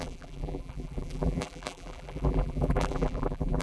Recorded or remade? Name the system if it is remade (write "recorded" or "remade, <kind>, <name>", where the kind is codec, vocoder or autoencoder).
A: remade, vocoder, BigVGAN v2